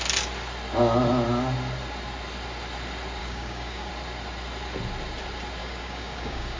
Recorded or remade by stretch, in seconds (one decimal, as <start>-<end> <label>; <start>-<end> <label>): 0.0-3.2 recorded; 3.2-3.9 remade; 3.9-5.6 recorded; 5.6-6.6 remade